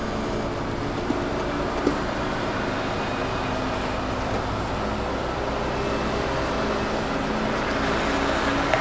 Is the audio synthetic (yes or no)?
no